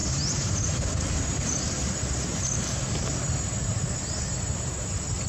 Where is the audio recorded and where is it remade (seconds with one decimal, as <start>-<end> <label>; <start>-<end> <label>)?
0.0-3.2 remade; 3.2-5.3 recorded